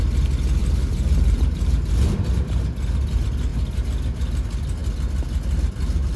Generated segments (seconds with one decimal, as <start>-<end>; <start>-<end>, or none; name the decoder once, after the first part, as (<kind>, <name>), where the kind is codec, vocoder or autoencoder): 0.6-1.9 (vocoder, BigVGAN v2)